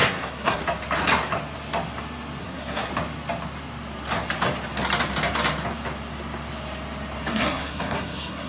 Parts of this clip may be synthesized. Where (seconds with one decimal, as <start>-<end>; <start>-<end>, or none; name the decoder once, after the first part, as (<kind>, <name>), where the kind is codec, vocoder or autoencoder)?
0.0-0.6 (codec, SNAC); 2.4-2.9; 7.3-8.5